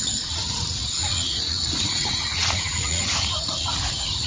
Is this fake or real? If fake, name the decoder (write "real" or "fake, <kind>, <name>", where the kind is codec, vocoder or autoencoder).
fake, vocoder, Vocos